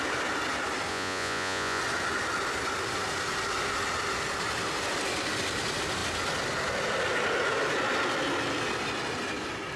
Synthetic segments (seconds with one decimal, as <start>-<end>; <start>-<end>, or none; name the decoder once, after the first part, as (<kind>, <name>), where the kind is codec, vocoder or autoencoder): 0.9-1.8 (vocoder, Vocos)